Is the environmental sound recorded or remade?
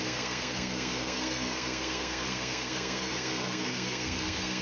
remade